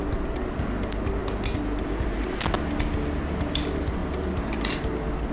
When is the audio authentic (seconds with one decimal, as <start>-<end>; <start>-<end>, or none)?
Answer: 0.0-5.3